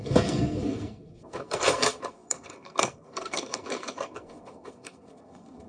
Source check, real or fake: fake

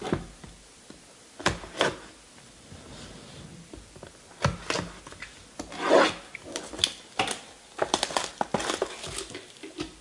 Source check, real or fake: real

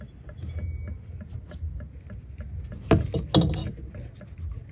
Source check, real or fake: real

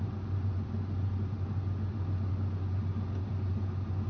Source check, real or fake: real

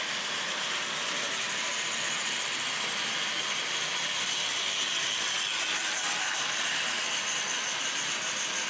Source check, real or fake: fake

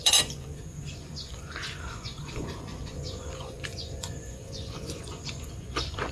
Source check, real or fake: fake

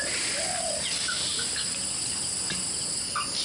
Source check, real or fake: real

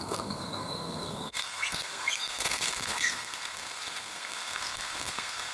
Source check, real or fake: fake